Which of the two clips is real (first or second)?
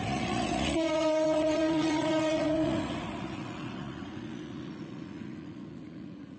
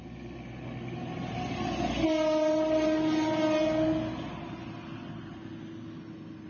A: second